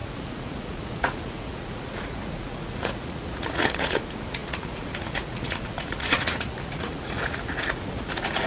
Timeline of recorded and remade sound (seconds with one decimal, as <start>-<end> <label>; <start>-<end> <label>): 0.0-8.5 remade